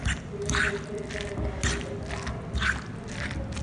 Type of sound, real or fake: real